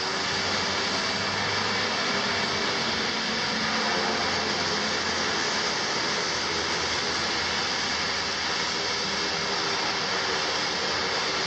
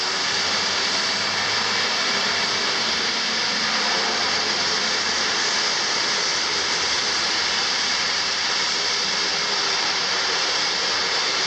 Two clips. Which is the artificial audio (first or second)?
second